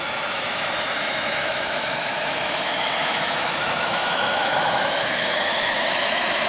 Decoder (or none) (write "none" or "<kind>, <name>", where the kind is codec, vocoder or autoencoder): autoencoder, DAC-VAE